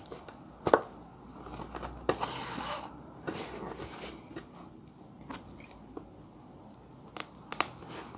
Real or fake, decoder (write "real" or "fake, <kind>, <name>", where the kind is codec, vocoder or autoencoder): real